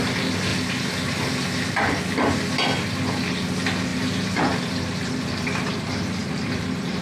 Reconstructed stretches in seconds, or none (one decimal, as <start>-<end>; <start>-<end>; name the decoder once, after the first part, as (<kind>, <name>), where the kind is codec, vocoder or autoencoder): 3.9-5.7 (vocoder, BigVGAN v2); 6.2-7.0